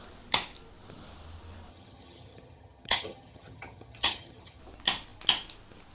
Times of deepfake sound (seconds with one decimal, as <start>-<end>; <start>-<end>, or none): 1.7-4.6

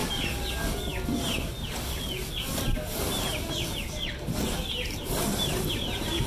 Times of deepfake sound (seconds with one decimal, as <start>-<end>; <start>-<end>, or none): none

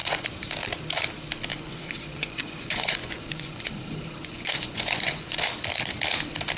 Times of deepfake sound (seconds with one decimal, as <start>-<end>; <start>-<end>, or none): 0.0-0.5; 1.5-3.7; 4.2-5.5

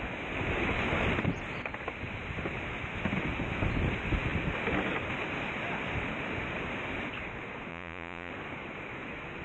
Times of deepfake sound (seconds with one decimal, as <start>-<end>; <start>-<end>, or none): 7.7-8.3

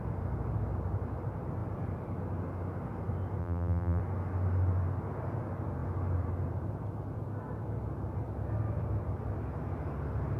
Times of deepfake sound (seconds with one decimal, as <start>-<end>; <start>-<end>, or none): 3.4-4.0